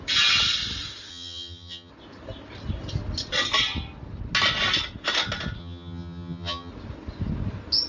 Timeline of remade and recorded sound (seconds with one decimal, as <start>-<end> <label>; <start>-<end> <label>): 0.0-1.1 recorded; 1.1-1.9 remade; 1.9-5.6 recorded; 5.6-6.7 remade; 6.7-7.9 recorded